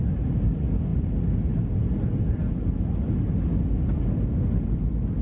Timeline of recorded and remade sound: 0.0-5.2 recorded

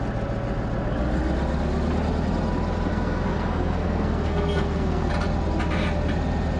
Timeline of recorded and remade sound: 0.0-2.9 recorded; 2.9-5.1 remade; 5.1-6.6 recorded

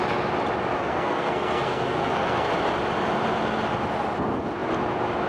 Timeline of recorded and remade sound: 0.0-0.8 recorded; 0.8-2.5 remade; 2.5-5.3 recorded

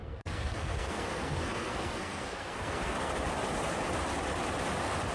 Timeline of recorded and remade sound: 0.0-3.1 remade; 3.1-5.1 recorded

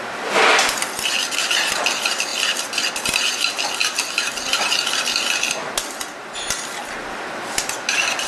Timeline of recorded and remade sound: 0.0-8.3 recorded

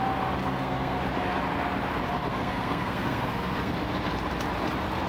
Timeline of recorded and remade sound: 0.0-0.4 recorded; 0.4-1.0 remade; 1.0-2.3 recorded; 2.3-3.7 remade; 3.7-5.1 recorded